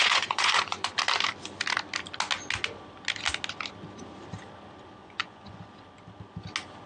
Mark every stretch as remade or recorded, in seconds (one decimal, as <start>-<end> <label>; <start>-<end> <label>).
0.0-1.0 remade; 1.0-5.0 recorded; 5.0-5.6 remade; 5.6-6.9 recorded